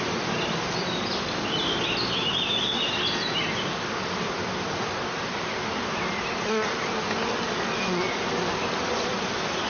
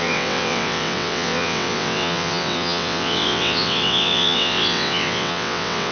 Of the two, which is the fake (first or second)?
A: second